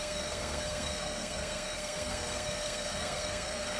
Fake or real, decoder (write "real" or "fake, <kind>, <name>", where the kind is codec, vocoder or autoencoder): fake, codec, SNAC